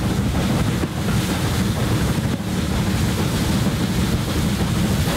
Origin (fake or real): real